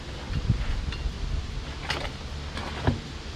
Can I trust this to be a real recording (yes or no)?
yes